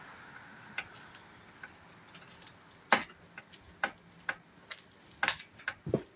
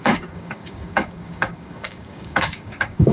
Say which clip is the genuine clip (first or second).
first